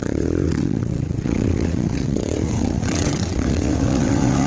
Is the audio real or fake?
fake